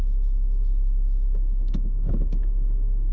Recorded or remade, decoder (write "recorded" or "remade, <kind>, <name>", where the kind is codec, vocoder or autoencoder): remade, autoencoder, DAC-VAE